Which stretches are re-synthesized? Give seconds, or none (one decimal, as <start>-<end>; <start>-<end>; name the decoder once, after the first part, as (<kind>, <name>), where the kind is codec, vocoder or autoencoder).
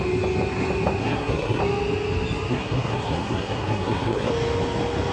1.0-1.6 (codec, SNAC); 2.5-4.3